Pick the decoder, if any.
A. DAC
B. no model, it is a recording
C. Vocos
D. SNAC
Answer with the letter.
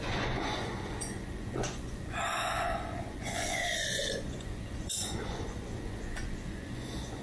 C